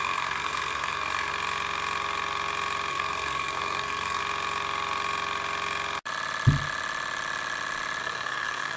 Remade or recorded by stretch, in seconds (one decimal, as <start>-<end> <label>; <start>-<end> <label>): 0.0-1.3 remade; 1.3-2.9 recorded; 2.9-4.2 remade; 4.2-8.0 recorded; 8.0-8.8 remade